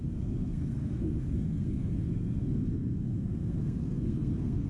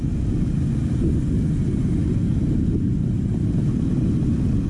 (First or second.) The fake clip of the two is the first